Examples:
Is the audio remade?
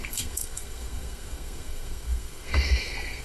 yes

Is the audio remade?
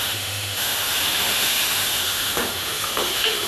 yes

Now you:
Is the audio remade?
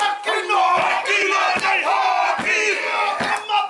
no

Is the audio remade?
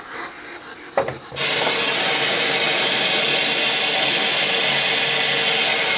no